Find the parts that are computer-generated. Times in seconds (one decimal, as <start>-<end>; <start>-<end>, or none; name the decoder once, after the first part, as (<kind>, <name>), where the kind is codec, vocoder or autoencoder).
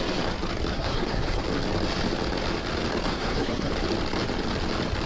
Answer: 0.7-1.4 (codec, SNAC); 3.1-3.7